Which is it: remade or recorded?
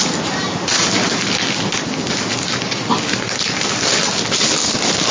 recorded